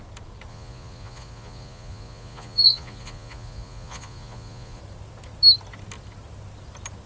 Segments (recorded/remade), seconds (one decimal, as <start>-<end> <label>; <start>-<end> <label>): 0.0-0.5 recorded; 0.5-4.8 remade; 4.8-7.1 recorded